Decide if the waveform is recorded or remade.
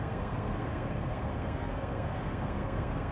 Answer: remade